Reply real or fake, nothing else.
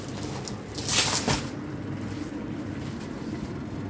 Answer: real